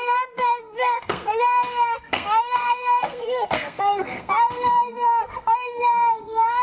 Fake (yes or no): yes